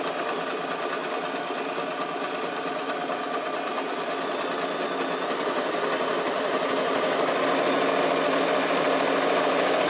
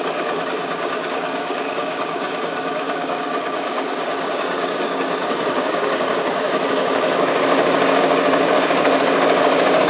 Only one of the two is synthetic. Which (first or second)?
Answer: second